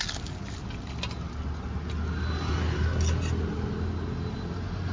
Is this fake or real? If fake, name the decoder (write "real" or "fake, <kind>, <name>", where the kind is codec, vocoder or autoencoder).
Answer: real